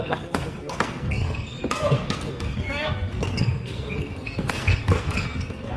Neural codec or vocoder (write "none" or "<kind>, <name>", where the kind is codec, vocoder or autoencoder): codec, SNAC